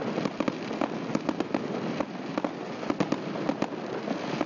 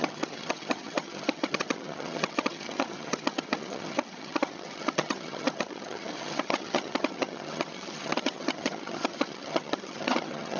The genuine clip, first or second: first